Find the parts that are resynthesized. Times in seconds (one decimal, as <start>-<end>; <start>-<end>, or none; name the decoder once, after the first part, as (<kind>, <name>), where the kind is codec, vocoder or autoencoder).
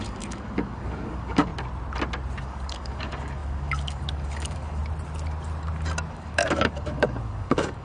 0.0-1.5 (codec, DAC); 2.4-4.8; 6.1-7.8